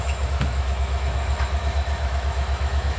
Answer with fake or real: fake